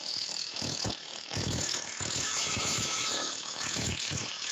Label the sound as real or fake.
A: fake